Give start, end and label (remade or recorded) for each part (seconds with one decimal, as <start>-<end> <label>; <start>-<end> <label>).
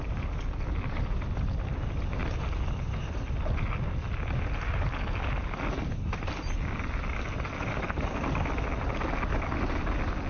0.0-10.3 recorded